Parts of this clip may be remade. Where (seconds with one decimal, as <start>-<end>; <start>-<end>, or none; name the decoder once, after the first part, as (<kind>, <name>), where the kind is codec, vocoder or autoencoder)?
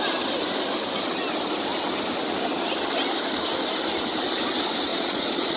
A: 4.9-5.6 (vocoder, Vocos)